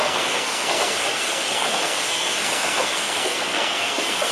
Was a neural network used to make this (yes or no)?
yes